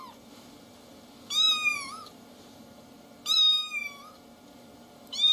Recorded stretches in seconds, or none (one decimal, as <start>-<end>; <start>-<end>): none